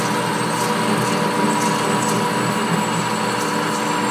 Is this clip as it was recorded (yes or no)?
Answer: yes